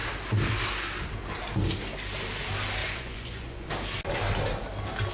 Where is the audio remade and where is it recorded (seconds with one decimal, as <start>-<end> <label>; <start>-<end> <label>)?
0.0-2.8 recorded; 2.8-3.7 remade; 3.7-5.1 recorded